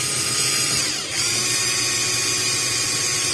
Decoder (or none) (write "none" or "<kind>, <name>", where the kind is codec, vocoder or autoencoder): none